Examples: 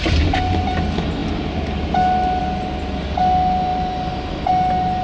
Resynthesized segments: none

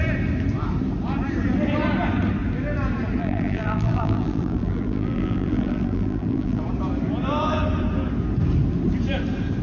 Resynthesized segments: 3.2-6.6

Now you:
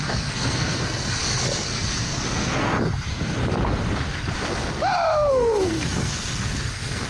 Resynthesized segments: 0.0-3.4; 5.3-7.1

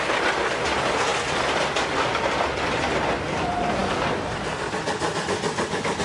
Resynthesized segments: none

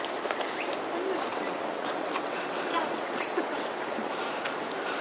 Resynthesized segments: 1.3-4.1

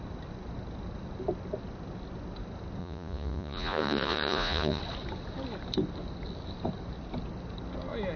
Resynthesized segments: 2.8-4.8